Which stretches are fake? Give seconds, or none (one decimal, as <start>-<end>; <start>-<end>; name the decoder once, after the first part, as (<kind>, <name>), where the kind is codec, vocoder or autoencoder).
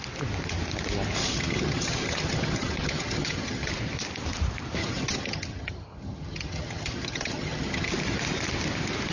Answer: 1.2-3.7 (vocoder, HiFi-GAN); 4.8-7.9